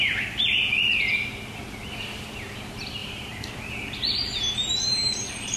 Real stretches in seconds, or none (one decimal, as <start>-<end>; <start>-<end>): 0.6-3.0